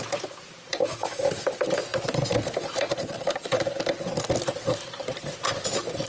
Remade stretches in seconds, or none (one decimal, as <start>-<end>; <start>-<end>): 0.8-1.3